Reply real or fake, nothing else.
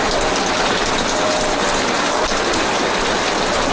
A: real